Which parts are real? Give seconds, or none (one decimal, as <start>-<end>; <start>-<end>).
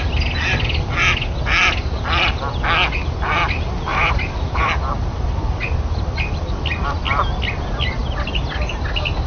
0.0-3.9; 4.7-9.3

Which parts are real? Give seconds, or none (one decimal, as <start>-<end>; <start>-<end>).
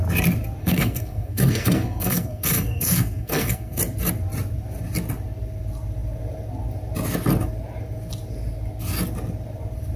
0.0-0.6; 3.8-10.0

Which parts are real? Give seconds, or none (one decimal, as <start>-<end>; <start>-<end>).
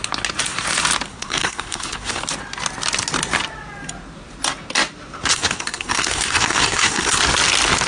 0.0-1.1; 2.2-5.3; 7.2-7.9